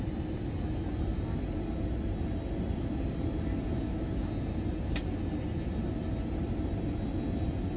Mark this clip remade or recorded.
recorded